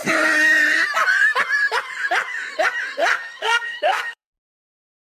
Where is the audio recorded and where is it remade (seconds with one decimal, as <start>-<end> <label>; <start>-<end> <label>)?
0.0-3.1 recorded; 3.1-4.3 remade; 4.3-5.2 recorded

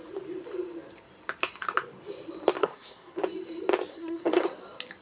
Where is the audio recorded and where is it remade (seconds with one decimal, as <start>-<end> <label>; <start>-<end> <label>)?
0.0-2.6 recorded; 2.6-3.2 remade; 3.2-3.9 recorded; 3.9-4.6 remade; 4.6-5.0 recorded

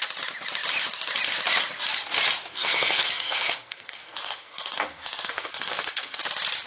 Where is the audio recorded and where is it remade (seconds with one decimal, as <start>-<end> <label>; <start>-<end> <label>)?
0.0-2.5 recorded; 2.5-6.2 remade; 6.2-6.7 recorded

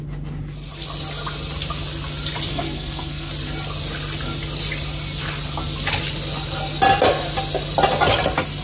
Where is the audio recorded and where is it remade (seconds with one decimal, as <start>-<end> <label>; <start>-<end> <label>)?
0.0-2.5 recorded; 2.5-3.3 remade; 3.3-8.6 recorded